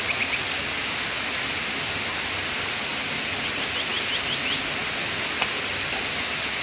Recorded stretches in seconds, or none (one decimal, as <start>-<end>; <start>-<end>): 0.0-6.6